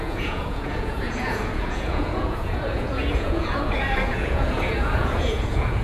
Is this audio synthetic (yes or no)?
yes